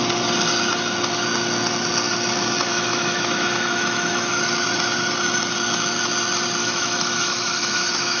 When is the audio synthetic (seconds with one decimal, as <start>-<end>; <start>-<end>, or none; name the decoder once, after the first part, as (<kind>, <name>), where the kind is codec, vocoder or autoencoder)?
2.7-4.4 (autoencoder, DAC-VAE); 6.6-8.2